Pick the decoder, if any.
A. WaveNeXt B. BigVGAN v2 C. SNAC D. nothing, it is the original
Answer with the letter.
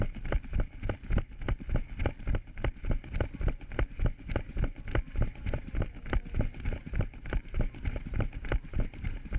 D